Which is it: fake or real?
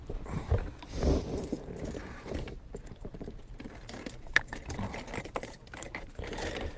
fake